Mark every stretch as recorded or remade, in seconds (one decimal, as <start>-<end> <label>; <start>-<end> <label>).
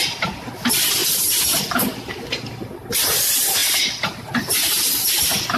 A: 0.0-5.6 recorded